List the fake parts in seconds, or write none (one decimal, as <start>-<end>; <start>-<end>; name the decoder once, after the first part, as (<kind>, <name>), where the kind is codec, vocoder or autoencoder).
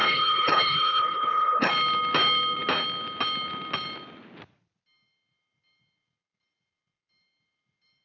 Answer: 0.0-1.7 (codec, HILCodec)